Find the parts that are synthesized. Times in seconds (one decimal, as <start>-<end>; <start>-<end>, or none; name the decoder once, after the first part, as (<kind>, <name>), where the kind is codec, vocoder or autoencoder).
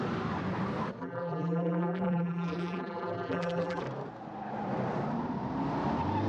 1.0-3.8 (vocoder, BigVGAN v2)